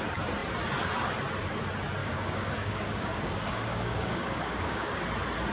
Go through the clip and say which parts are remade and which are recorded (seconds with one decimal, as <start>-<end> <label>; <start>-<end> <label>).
0.0-2.0 recorded; 2.0-5.0 remade; 5.0-5.5 recorded